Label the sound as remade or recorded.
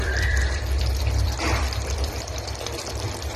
remade